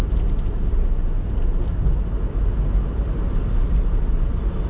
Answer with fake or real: real